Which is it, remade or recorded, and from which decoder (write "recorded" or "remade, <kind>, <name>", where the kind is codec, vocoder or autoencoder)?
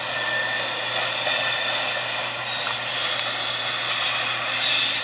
recorded